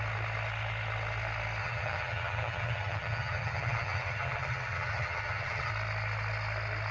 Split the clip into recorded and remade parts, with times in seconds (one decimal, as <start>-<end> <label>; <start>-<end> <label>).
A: 0.0-1.6 recorded; 1.6-5.7 remade; 5.7-6.9 recorded